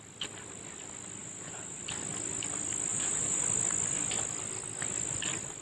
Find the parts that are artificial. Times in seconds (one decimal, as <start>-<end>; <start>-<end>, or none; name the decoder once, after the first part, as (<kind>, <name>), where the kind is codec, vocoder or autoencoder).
1.2-1.8 (vocoder, Vocos); 2.9-3.4

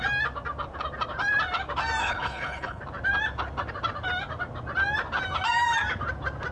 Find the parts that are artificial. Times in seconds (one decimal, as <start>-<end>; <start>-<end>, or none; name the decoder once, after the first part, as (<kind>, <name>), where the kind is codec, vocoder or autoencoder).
2.0-2.8 (codec, HILCodec)